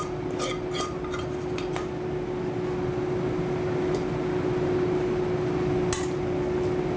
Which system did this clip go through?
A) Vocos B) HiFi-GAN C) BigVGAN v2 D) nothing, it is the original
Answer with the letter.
D